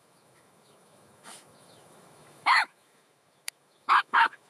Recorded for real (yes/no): no